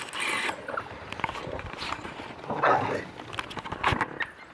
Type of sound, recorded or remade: recorded